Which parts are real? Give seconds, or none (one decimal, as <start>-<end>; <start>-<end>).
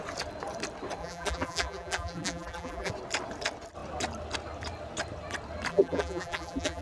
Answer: 0.0-1.0; 2.9-5.7